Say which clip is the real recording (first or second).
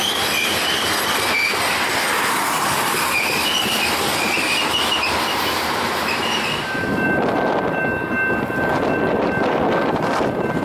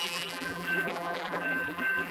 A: first